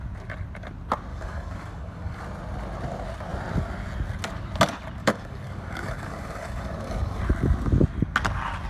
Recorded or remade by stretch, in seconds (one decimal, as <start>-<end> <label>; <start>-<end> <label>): 0.0-1.1 recorded; 1.1-2.2 remade; 2.2-5.0 recorded; 5.0-7.2 remade; 7.2-8.7 recorded